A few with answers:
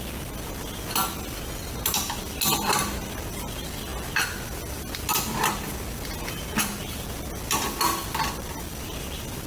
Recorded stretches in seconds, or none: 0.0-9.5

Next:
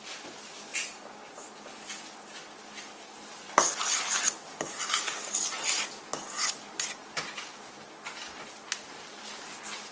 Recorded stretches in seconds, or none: 0.0-9.9

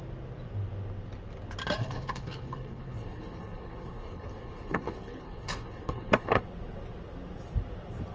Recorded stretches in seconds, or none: 0.0-1.8; 6.4-8.1

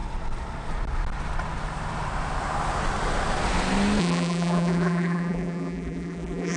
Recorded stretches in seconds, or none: 0.0-4.0

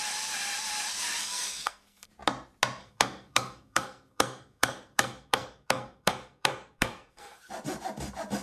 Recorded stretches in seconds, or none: 0.0-1.2; 2.1-2.8; 7.5-8.4

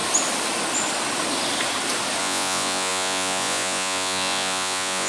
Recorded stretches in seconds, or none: 0.0-2.2